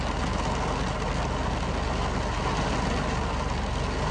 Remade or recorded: recorded